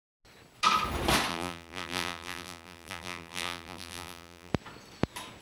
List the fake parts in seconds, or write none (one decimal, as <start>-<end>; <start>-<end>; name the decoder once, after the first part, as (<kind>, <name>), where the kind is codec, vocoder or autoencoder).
1.3-4.5 (vocoder, BigVGAN v2)